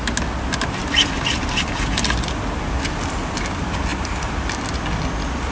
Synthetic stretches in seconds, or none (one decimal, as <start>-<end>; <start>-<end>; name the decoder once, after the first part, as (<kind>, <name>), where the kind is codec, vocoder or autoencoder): none